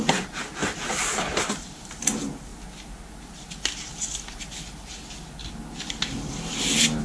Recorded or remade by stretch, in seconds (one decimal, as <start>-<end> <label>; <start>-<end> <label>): 0.0-0.6 recorded; 0.6-1.9 remade; 1.9-7.0 recorded